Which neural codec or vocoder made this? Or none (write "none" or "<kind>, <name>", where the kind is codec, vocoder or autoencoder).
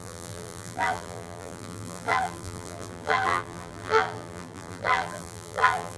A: vocoder, BigVGAN v2